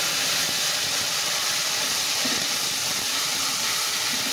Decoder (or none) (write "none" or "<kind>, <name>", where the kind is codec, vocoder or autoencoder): none